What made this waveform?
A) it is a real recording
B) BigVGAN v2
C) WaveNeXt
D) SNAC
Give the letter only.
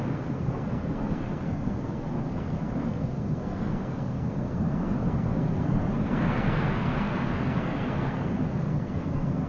D